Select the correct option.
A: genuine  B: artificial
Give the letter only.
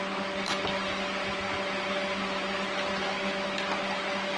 A